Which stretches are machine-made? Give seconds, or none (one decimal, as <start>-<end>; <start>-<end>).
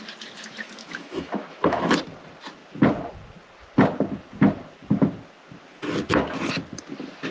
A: 0.8-1.9